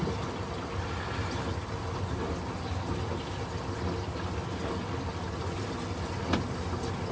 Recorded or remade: recorded